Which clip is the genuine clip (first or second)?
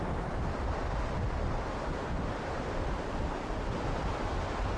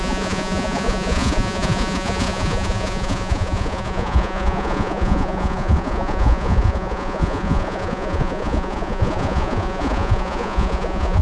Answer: first